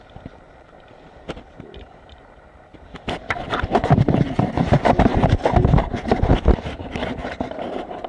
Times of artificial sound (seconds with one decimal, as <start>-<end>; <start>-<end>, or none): 2.7-4.4; 7.2-8.1